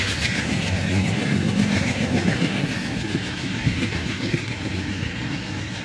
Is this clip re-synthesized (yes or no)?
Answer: yes